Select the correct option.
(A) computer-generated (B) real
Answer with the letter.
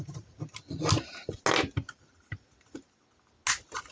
B